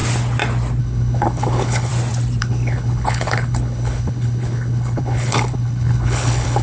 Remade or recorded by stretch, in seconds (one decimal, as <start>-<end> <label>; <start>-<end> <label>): 0.0-0.8 recorded; 0.8-1.9 remade; 1.9-2.4 recorded; 2.4-6.6 remade